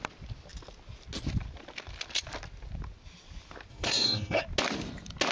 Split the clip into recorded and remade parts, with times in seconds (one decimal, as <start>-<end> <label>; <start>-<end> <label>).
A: 0.0-3.7 recorded; 3.7-4.4 remade; 4.4-5.3 recorded